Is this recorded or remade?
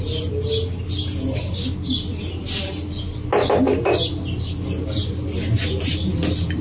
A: recorded